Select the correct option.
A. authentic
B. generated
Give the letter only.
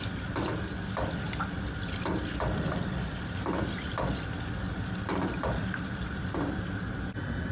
A